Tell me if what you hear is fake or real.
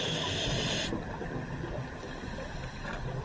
real